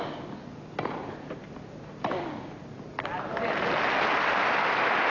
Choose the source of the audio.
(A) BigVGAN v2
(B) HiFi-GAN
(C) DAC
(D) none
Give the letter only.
D